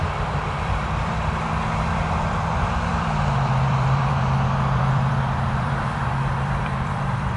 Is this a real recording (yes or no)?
no